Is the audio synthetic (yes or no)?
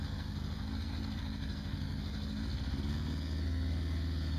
yes